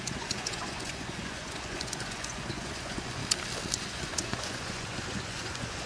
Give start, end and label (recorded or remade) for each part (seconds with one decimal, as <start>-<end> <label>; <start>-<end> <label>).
0.0-3.2 remade; 3.2-3.8 recorded; 3.8-5.9 remade